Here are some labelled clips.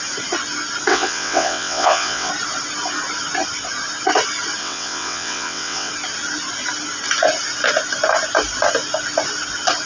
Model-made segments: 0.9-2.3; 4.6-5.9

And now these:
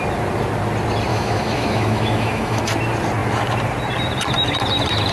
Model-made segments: 1.1-2.6

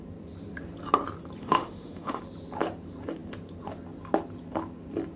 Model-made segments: 1.4-2.2

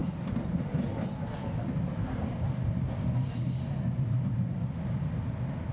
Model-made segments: none

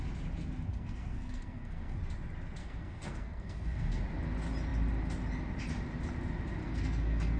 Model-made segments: 0.7-2.0; 2.6-4.0; 6.6-7.4